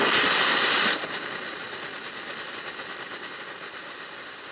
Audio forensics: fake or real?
real